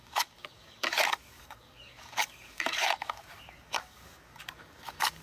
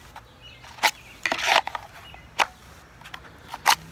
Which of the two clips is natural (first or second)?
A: second